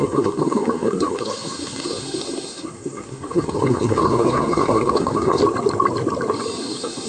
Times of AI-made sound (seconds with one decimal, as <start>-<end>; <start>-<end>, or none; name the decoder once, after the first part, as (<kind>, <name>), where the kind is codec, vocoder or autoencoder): 0.0-5.4 (codec, SNAC); 6.6-7.1